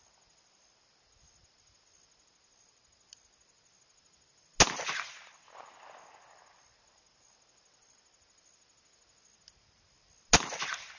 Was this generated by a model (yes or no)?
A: no